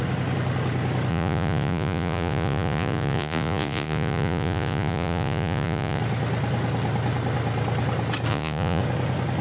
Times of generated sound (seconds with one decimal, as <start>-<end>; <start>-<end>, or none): 1.1-6.0; 8.3-8.8